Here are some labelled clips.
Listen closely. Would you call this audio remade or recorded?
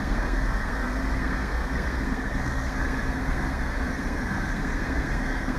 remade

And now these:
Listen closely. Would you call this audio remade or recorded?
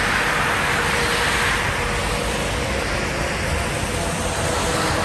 recorded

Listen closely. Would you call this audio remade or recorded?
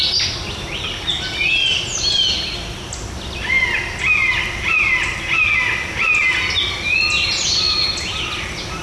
recorded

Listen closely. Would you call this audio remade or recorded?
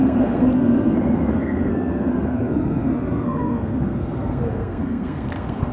remade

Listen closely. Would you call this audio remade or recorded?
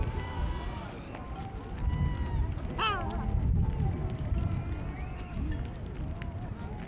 recorded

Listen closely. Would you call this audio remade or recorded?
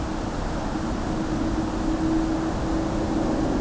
recorded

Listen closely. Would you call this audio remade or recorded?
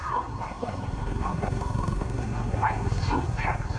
remade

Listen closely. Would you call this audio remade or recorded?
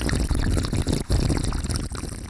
recorded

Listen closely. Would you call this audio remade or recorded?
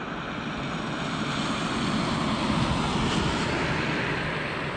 recorded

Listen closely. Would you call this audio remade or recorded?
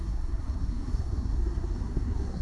remade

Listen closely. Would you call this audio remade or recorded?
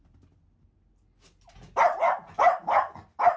recorded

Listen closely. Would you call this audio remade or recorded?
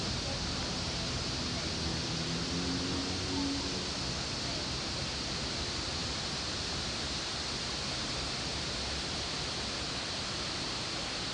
recorded